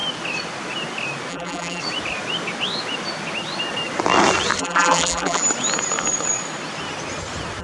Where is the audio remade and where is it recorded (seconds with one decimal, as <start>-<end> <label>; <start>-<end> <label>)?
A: 0.0-1.3 recorded; 1.3-1.8 remade; 1.8-4.6 recorded; 4.6-5.4 remade; 5.4-7.6 recorded